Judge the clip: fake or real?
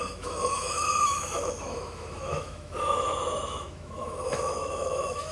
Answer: fake